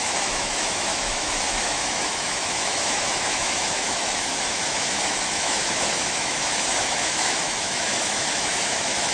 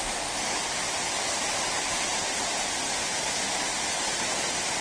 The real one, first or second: second